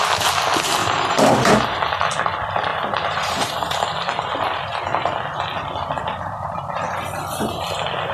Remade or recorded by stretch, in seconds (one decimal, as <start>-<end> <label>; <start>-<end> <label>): 0.0-0.8 recorded; 0.8-2.1 remade; 2.1-2.7 recorded; 2.7-4.7 remade; 4.7-8.1 recorded